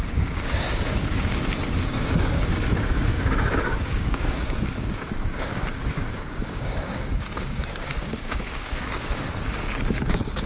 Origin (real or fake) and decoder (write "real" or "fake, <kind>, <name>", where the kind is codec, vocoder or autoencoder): fake, codec, DAC